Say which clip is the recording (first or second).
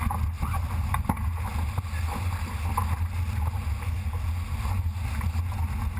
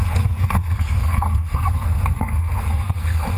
first